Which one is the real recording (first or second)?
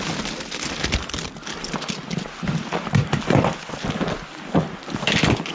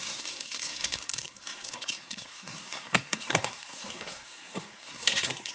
first